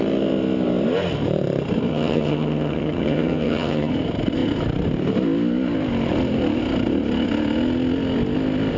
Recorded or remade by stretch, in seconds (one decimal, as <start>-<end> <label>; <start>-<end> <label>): 0.0-1.9 recorded; 1.9-3.9 remade; 3.9-8.8 recorded